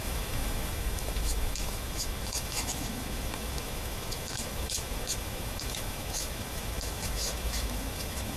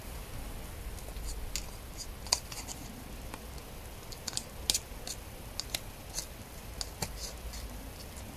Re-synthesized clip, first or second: first